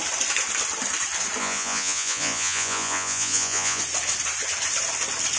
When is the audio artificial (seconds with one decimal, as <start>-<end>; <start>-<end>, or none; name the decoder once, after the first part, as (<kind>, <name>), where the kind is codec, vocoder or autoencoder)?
1.4-3.8 (vocoder, Vocos)